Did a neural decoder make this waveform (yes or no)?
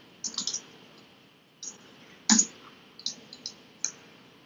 no